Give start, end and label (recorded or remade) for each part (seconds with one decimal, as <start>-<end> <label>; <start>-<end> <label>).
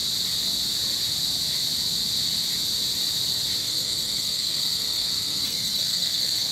0.0-3.6 recorded; 3.6-6.5 remade